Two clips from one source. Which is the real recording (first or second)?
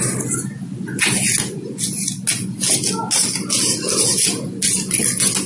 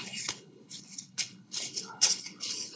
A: first